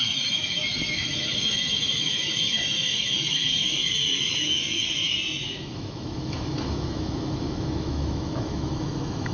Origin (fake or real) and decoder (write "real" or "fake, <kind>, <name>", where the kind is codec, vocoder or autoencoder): fake, autoencoder, DAC-VAE